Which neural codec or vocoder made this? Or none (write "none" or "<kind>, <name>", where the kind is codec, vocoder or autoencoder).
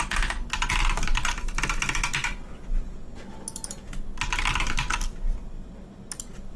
none